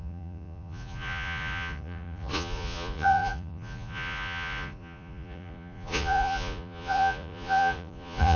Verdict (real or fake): fake